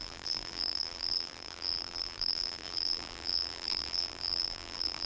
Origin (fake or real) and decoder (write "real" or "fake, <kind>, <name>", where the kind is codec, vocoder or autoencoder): fake, vocoder, BigVGAN v2